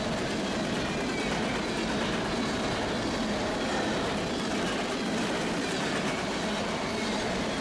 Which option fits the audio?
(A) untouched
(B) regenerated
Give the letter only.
A